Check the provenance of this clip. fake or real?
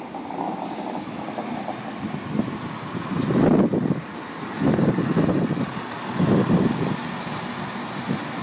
real